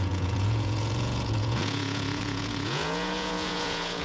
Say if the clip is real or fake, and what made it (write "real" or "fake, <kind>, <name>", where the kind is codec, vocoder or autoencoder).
fake, vocoder, Vocos